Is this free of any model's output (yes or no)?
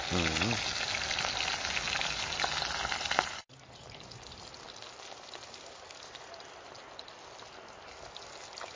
yes